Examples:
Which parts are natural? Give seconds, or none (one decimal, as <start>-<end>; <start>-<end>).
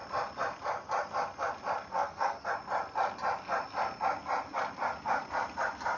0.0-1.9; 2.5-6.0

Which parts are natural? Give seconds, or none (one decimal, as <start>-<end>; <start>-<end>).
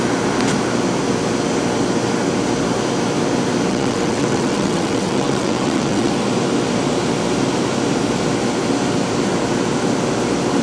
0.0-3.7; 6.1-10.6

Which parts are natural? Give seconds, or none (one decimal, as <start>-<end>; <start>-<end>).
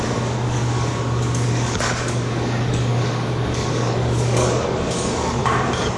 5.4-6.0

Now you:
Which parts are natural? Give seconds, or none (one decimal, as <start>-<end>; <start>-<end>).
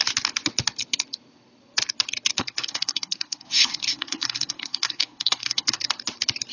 0.0-2.4; 5.9-6.5